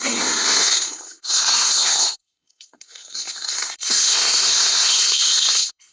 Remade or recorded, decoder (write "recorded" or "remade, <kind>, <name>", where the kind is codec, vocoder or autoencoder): remade, codec, SNAC